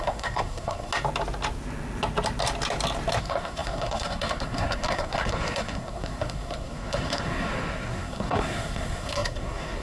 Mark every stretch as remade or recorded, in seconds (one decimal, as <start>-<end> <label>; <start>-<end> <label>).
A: 0.0-0.9 remade; 0.9-3.2 recorded; 3.2-9.8 remade